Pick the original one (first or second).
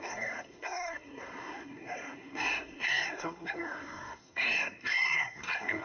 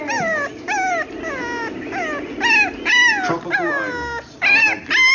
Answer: second